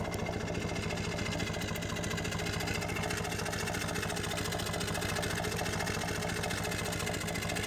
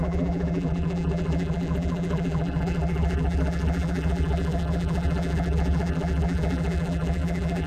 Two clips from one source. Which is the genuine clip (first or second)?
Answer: first